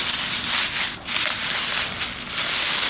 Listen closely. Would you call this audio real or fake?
real